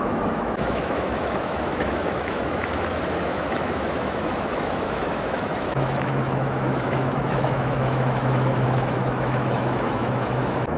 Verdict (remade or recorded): remade